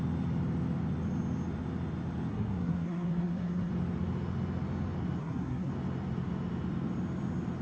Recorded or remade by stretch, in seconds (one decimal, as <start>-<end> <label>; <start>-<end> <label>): 0.0-2.3 recorded; 2.3-3.7 remade; 3.7-5.2 recorded; 5.2-5.7 remade; 5.7-7.6 recorded